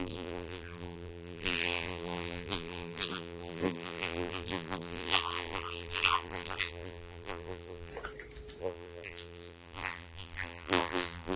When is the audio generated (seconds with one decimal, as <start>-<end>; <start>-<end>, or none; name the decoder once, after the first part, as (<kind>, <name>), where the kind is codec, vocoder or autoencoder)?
0.0-7.9 (vocoder, BigVGAN v2); 8.6-11.4